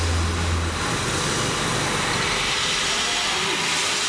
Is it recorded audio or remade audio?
recorded